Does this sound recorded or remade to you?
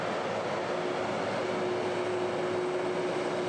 recorded